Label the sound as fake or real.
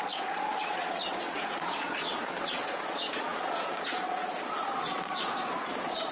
fake